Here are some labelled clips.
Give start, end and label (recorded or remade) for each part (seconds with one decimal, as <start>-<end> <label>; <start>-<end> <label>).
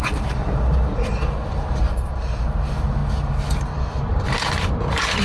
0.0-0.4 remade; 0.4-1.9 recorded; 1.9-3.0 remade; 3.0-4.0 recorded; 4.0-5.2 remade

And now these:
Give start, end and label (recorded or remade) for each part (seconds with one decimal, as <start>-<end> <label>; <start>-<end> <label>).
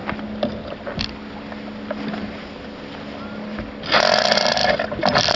0.0-5.4 recorded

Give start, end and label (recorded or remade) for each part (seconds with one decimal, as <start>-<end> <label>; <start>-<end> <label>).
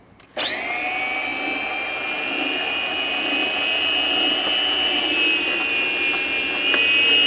0.0-7.3 recorded